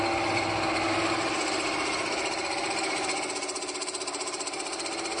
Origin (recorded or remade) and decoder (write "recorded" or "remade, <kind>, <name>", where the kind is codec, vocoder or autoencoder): recorded